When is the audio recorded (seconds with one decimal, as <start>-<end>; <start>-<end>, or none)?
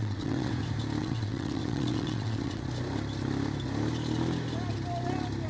0.5-1.0; 2.7-5.5